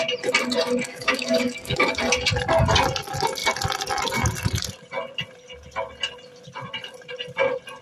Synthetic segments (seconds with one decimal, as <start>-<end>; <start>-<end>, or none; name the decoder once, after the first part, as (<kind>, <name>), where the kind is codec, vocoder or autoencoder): 0.9-2.0 (codec, DAC)